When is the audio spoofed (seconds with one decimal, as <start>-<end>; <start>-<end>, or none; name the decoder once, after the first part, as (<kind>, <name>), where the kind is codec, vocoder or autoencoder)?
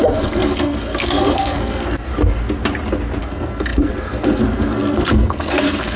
0.0-2.1 (codec, SNAC); 3.2-6.0